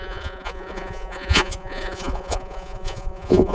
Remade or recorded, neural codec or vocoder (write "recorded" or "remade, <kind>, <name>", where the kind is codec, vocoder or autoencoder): remade, vocoder, Vocos